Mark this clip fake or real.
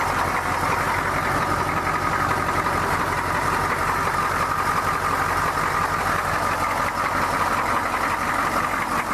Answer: real